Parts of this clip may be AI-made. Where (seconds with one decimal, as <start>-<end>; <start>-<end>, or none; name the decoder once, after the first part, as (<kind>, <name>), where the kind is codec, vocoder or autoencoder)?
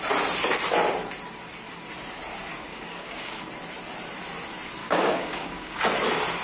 2.7-3.5 (codec, DAC); 4.8-5.8